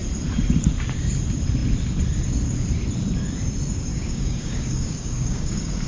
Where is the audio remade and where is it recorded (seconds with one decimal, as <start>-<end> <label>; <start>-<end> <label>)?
0.0-3.9 recorded; 3.9-5.9 remade